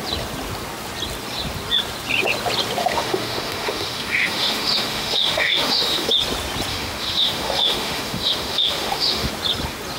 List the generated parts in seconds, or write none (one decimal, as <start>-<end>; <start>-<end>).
2.8-6.1; 6.7-9.3